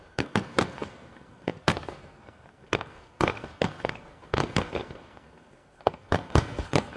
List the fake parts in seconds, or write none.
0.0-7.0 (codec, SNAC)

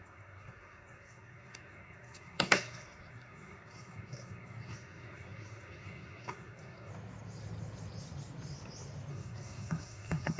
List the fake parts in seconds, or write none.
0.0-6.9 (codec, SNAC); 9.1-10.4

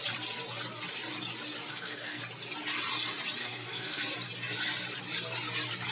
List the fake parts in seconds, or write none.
1.7-2.2 (codec, SNAC); 3.4-4.0